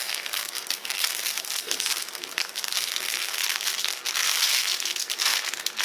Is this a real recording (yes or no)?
no